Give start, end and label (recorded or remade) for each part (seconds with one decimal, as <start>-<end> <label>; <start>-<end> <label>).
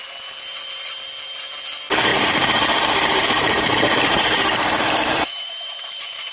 0.0-2.1 recorded; 2.1-6.3 remade